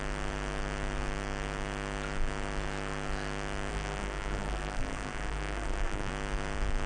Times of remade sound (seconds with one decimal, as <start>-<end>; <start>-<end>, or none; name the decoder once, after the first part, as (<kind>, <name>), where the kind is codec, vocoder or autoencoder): 3.7-6.1 (codec, SNAC)